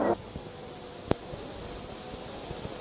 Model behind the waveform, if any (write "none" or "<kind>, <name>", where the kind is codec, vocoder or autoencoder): none